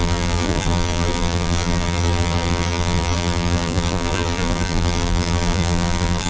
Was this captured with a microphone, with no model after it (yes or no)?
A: no